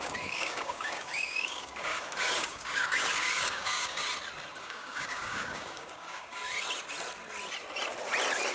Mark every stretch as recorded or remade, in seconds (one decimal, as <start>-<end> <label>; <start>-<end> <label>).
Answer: 0.0-4.0 remade; 4.0-4.6 recorded; 4.6-6.4 remade; 6.4-8.5 recorded